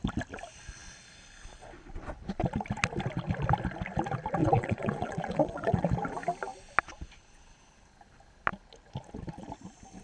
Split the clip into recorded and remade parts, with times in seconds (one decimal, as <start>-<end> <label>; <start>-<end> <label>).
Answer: 0.0-4.4 recorded; 4.4-5.9 remade; 5.9-10.0 recorded